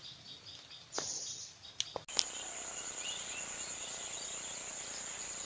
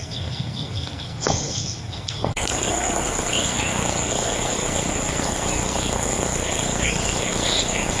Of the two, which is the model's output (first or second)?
second